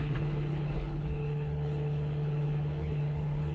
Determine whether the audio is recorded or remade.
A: remade